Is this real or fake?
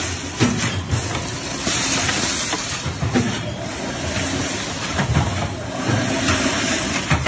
real